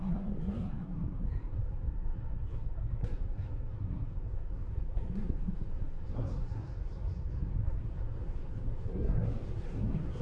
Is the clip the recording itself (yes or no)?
no